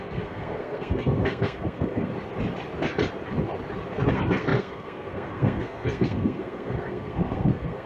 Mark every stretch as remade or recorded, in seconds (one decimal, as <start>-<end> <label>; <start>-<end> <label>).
0.0-2.1 remade; 2.1-4.1 recorded; 4.1-7.9 remade